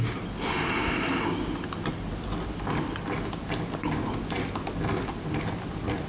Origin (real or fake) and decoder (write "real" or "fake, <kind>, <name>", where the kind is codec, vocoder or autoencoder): real